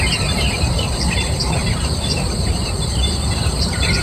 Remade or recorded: remade